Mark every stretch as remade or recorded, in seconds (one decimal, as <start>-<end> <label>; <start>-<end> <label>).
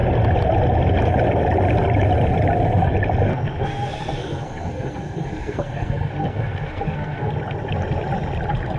0.0-3.3 recorded; 3.3-7.3 remade; 7.3-8.8 recorded